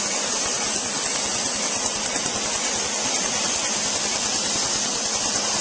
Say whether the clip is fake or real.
real